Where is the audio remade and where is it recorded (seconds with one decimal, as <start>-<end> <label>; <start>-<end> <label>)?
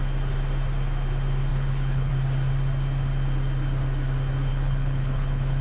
0.0-1.5 recorded; 1.5-2.1 remade; 2.1-4.5 recorded; 4.5-5.6 remade